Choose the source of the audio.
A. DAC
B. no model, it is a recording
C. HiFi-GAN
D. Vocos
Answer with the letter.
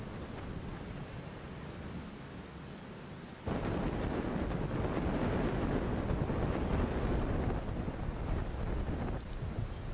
B